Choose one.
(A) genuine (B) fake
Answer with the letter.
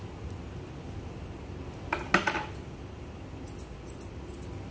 A